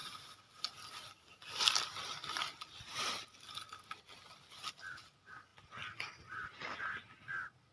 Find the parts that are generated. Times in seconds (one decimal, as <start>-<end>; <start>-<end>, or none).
none